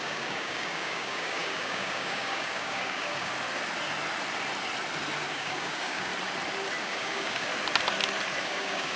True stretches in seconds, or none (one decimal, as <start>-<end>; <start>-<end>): 3.3-5.3; 6.1-6.8; 7.5-8.4